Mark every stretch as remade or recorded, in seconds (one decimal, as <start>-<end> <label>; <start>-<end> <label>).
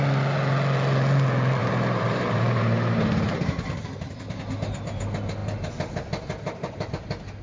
0.0-1.6 recorded; 1.6-4.4 remade; 4.4-7.4 recorded